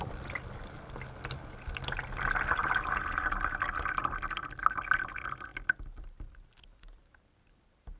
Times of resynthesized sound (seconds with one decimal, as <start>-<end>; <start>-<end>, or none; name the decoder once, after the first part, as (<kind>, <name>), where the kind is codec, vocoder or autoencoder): 0.0-8.0 (vocoder, BigVGAN v2)